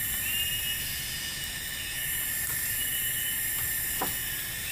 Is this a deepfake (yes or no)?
no